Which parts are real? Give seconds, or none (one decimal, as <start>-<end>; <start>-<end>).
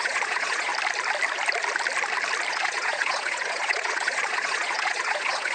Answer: 0.7-2.5